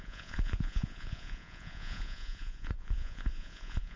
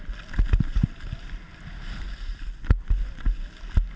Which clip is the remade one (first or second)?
first